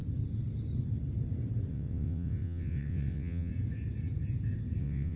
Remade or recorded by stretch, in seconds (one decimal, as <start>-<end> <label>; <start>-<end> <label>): 0.0-1.7 recorded; 1.7-3.5 remade; 3.5-4.8 recorded; 4.8-5.2 remade